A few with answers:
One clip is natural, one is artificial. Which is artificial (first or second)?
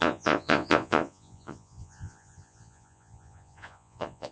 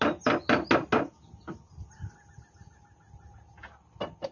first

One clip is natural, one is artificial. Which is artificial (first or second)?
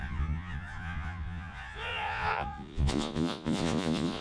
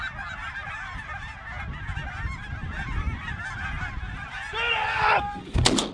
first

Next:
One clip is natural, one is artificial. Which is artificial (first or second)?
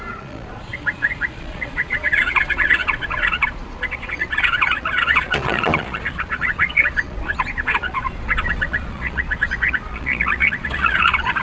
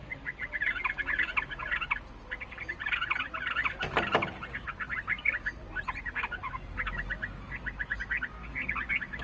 first